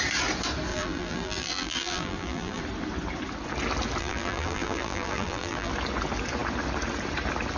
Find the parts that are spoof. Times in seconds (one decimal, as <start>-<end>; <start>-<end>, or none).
0.7-2.6; 4.0-5.7